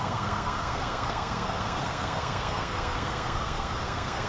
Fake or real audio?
fake